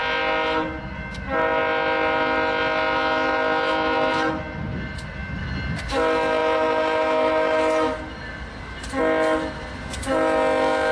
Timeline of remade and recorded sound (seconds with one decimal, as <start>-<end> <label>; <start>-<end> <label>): 0.0-10.9 recorded